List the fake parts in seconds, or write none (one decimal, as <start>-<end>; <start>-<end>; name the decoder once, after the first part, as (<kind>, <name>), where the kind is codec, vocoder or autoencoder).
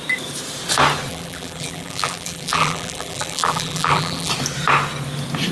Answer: 1.1-4.3 (vocoder, BigVGAN v2)